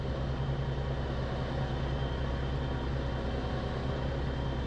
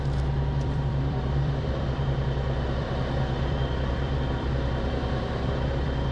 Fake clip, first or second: second